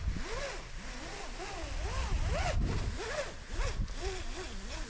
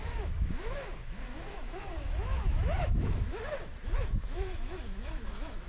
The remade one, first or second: second